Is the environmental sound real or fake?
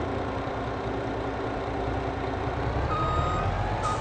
fake